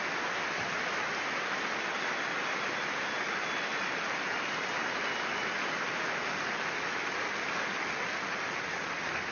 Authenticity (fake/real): real